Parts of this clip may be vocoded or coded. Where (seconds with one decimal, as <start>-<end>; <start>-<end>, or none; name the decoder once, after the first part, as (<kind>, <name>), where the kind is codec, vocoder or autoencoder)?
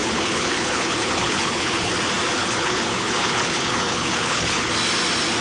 0.0-1.9 (codec, HILCodec); 2.4-4.7